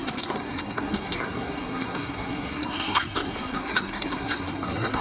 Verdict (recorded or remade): remade